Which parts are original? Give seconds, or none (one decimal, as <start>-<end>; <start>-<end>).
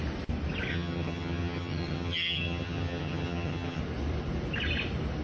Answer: 0.0-0.7; 3.8-5.2